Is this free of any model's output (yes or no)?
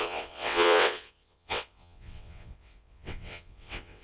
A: no